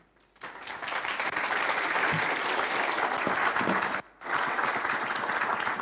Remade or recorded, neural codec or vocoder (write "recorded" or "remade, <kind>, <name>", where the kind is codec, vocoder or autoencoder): recorded